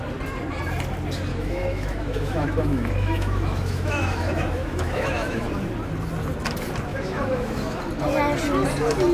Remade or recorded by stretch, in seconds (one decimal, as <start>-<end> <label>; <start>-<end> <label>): 0.0-1.3 recorded; 1.3-5.5 remade; 5.5-6.9 recorded; 6.9-7.8 remade; 7.8-9.1 recorded